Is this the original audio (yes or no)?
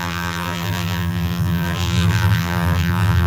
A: no